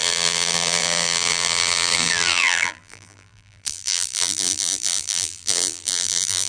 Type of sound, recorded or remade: remade